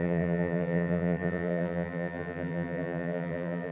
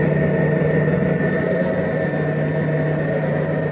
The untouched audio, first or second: second